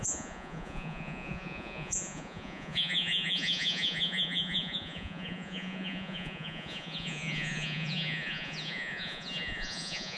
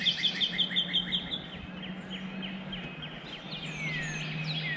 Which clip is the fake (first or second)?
first